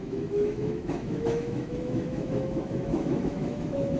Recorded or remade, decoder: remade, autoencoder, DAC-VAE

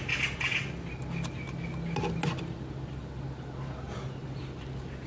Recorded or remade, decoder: recorded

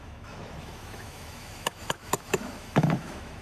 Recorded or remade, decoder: remade, autoencoder, DAC-VAE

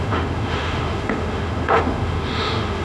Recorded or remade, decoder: remade, autoencoder, DAC-VAE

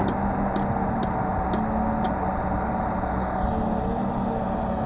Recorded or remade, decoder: recorded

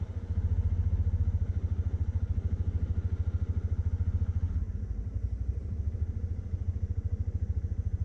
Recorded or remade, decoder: recorded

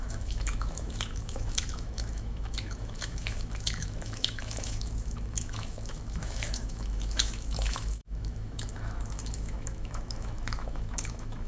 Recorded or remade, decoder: remade, autoencoder, DAC-VAE